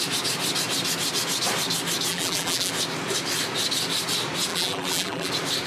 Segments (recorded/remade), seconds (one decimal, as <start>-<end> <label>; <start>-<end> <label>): 0.0-2.1 recorded; 2.1-2.7 remade; 2.7-4.5 recorded; 4.5-5.3 remade; 5.3-5.7 recorded

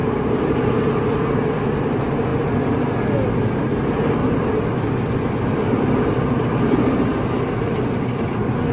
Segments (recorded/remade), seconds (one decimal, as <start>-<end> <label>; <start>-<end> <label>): 0.0-1.4 recorded; 1.4-4.2 remade; 4.2-4.8 recorded; 4.8-8.7 remade

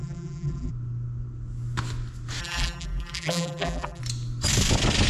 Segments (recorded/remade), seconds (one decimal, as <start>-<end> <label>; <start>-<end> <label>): 0.0-0.7 remade; 0.7-2.4 recorded; 2.4-4.0 remade; 4.0-5.1 recorded

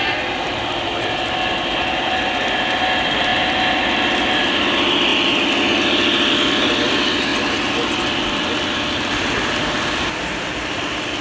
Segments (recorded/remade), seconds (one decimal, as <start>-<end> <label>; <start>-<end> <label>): 0.0-5.1 remade; 5.1-6.3 recorded; 6.3-11.2 remade